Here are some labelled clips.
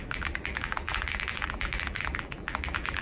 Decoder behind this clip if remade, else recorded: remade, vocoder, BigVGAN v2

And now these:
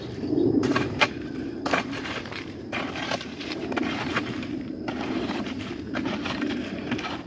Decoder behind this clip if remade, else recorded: remade, vocoder, BigVGAN v2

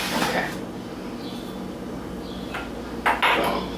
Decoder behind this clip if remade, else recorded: recorded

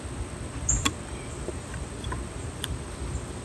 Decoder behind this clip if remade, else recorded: recorded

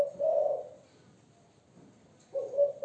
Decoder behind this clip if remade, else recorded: recorded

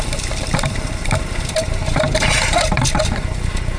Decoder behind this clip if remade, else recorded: remade, vocoder, BigVGAN v2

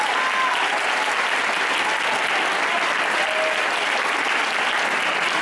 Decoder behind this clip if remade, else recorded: recorded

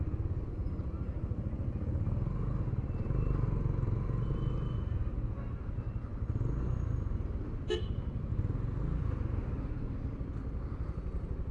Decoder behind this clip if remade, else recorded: recorded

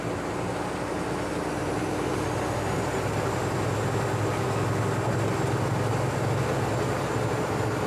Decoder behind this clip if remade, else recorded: recorded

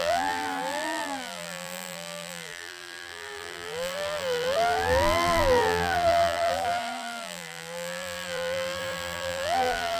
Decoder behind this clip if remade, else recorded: remade, vocoder, BigVGAN v2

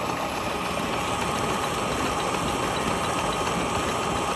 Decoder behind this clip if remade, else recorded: recorded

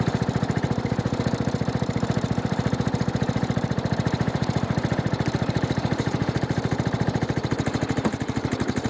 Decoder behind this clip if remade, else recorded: remade, vocoder, BigVGAN v2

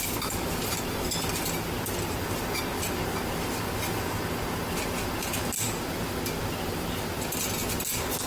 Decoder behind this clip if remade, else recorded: recorded